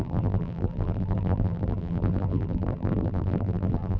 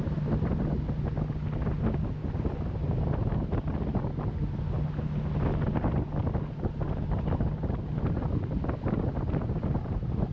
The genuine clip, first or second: second